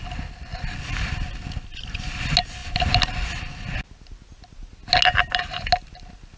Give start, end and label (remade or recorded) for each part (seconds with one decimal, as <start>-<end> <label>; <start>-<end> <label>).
0.0-6.4 recorded